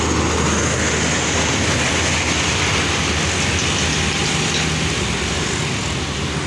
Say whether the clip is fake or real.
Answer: real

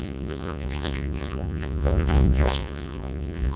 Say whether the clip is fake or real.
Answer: fake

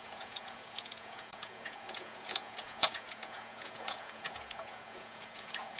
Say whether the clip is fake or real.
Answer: fake